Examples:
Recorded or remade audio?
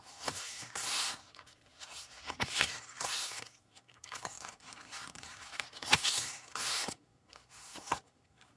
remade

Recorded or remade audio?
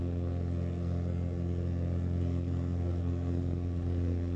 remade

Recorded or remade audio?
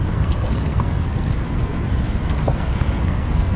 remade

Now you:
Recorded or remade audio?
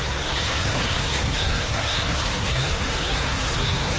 remade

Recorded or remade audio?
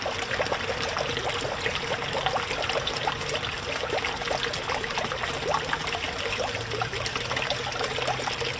recorded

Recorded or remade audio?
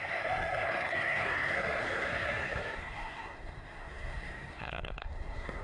remade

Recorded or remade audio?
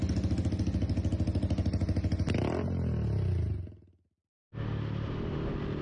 recorded